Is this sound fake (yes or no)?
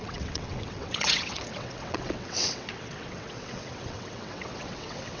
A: yes